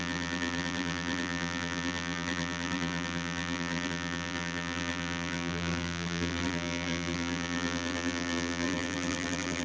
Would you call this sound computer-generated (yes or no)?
yes